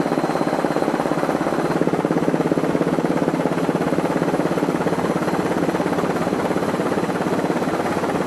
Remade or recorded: recorded